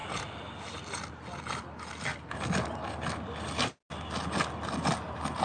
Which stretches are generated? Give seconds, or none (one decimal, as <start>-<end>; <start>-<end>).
none